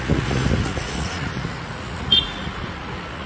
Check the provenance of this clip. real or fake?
fake